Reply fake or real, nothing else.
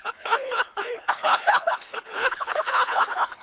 fake